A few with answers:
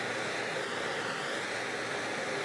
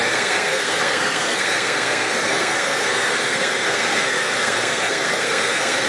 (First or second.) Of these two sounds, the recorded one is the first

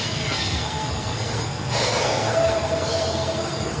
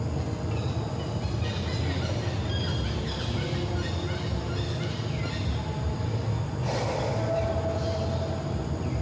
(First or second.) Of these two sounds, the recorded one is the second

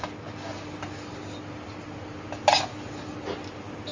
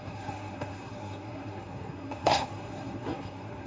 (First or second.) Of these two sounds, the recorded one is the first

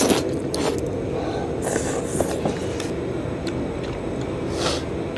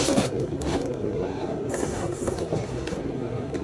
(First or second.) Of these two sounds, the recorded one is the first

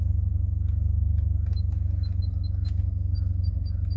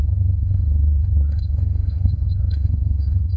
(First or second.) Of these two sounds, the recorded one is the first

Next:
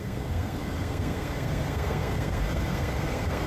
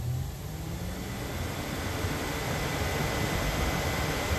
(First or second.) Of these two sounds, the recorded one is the second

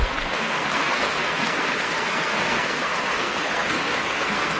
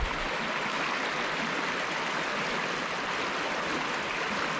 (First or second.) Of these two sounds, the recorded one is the second